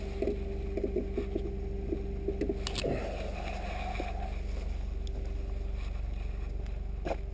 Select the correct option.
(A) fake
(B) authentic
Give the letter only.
B